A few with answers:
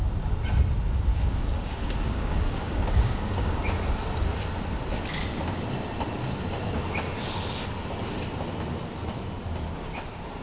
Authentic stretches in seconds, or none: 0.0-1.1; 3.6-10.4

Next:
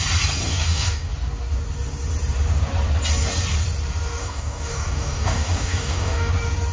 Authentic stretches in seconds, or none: 0.0-0.5; 1.1-4.2; 6.3-6.7